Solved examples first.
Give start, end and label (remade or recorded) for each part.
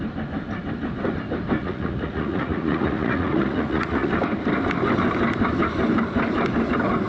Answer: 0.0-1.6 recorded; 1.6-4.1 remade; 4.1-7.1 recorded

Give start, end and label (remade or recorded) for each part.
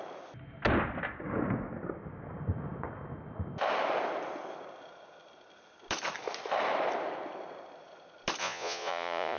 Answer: 0.0-8.4 recorded; 8.4-9.4 remade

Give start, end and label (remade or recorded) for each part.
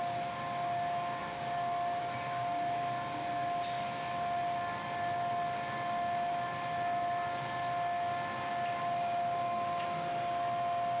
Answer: 0.0-11.0 recorded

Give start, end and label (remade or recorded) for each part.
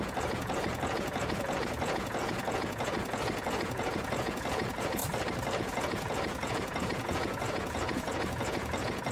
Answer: 0.0-5.0 remade; 5.0-5.6 recorded; 5.6-9.1 remade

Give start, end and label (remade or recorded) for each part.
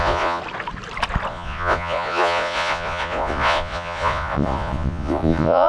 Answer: 0.0-0.4 remade; 0.4-1.3 recorded; 1.3-5.7 remade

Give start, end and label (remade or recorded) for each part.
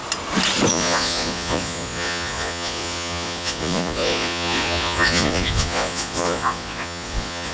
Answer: 0.0-0.7 recorded; 0.7-7.5 remade